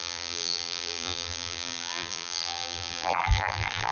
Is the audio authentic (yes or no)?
no